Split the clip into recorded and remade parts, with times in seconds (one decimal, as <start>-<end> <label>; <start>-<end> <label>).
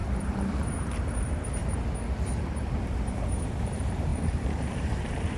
0.0-1.6 remade; 1.6-3.1 recorded; 3.1-5.4 remade